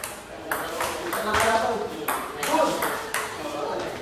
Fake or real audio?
fake